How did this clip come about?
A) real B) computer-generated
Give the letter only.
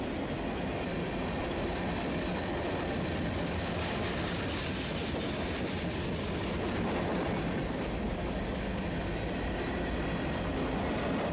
A